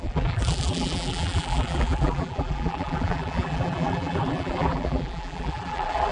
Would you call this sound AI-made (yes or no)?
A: yes